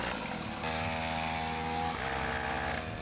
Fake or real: real